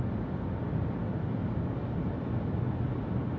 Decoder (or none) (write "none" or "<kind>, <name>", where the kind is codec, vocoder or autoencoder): none